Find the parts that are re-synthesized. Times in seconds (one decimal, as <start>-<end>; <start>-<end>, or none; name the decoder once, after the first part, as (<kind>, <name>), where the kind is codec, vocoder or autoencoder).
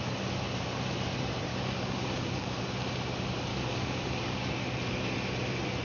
1.5-2.6 (codec, DAC); 3.5-4.5